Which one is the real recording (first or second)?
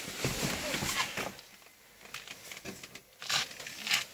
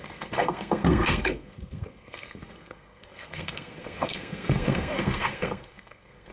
first